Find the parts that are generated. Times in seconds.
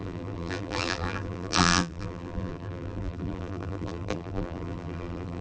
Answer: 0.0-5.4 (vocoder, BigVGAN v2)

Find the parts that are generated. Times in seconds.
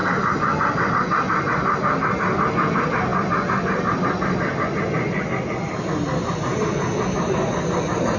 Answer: none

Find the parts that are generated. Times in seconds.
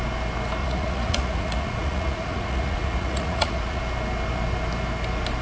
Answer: 0.6-3.8 (vocoder, Vocos)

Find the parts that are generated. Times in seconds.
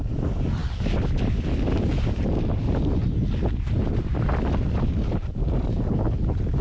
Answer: none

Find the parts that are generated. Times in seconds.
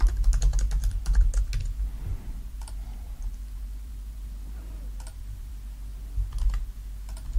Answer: 2.1-5.5 (vocoder, BigVGAN v2)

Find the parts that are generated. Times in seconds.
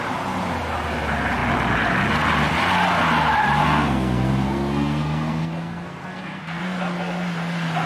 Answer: 3.6-6.6 (codec, SNAC)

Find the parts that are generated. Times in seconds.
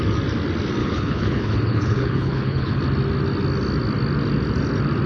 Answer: 0.8-2.8 (codec, HILCodec)